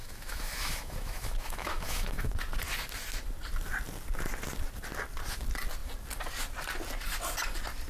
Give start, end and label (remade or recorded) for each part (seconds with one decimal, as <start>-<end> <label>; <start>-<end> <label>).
0.0-2.3 remade; 2.3-7.9 recorded